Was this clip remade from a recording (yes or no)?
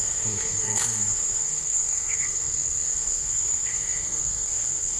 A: yes